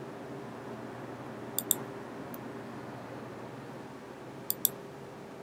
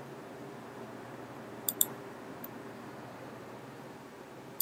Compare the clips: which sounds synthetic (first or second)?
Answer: second